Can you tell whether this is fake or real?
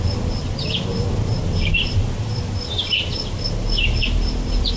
real